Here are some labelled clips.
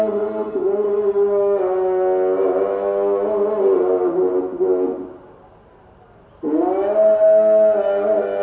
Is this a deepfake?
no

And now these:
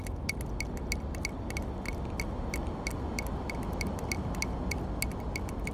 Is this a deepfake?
no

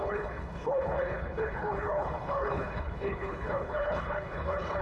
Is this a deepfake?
yes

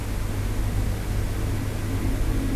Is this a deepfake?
no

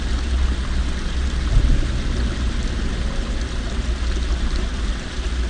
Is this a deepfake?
no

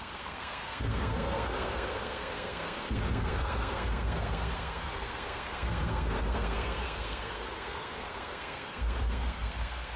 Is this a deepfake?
yes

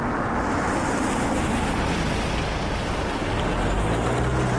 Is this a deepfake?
no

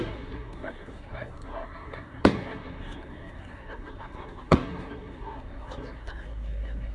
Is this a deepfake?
yes